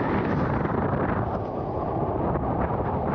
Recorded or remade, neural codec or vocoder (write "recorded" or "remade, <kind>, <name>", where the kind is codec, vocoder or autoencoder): recorded